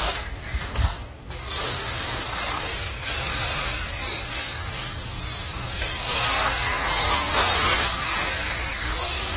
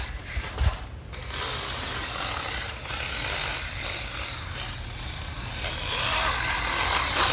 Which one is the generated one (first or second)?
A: first